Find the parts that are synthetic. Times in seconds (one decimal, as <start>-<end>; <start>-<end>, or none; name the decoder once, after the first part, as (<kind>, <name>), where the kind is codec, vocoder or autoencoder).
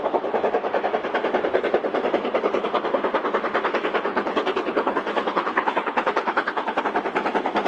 4.1-6.8 (codec, HILCodec)